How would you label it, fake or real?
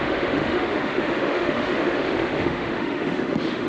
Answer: fake